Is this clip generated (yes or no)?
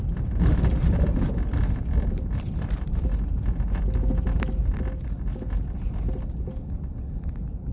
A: no